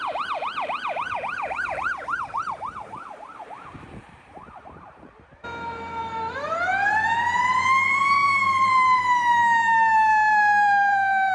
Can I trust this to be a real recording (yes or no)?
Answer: no